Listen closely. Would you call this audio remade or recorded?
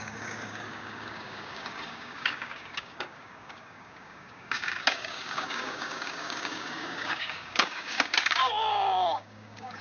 remade